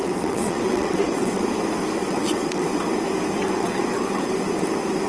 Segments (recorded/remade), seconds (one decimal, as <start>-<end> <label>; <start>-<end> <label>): 0.0-1.4 remade; 1.4-2.0 recorded; 2.0-2.8 remade; 2.8-3.4 recorded; 3.4-4.3 remade; 4.3-5.1 recorded